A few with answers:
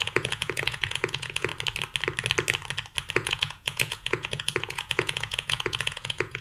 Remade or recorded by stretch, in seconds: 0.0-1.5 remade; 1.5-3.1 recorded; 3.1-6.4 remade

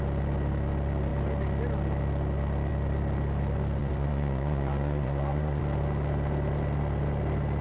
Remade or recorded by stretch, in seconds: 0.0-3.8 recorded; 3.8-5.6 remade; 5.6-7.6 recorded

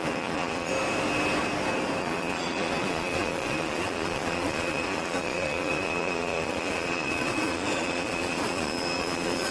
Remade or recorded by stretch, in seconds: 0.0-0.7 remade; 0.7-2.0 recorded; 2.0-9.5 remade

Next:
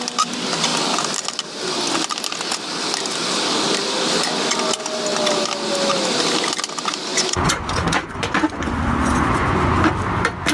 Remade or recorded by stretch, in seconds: 0.0-7.1 recorded; 7.1-9.8 remade; 9.8-10.5 recorded

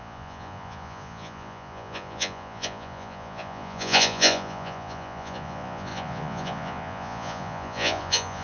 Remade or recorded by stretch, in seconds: 0.0-8.4 remade

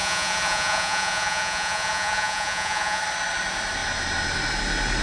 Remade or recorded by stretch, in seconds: 0.0-3.0 remade; 3.0-5.0 recorded